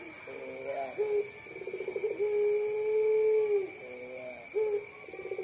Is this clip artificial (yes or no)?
no